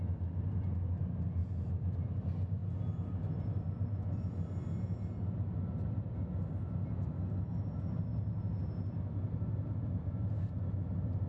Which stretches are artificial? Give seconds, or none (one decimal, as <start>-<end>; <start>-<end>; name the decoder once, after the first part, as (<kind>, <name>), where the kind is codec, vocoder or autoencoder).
none